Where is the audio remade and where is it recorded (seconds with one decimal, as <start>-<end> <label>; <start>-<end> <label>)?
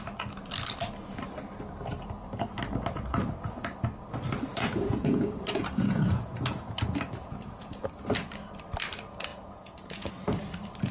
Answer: 0.0-4.5 recorded; 4.5-7.8 remade; 7.8-9.3 recorded; 9.3-10.1 remade; 10.1-10.9 recorded